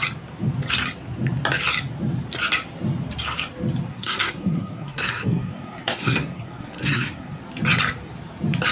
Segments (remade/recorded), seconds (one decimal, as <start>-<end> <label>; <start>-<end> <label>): 0.0-3.9 recorded; 3.9-7.4 remade; 7.4-8.7 recorded